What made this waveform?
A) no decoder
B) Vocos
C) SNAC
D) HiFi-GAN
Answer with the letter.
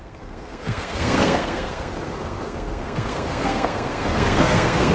C